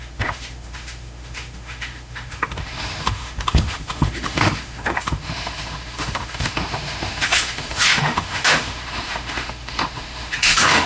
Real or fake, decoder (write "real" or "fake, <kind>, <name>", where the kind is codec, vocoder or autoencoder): fake, autoencoder, DAC-VAE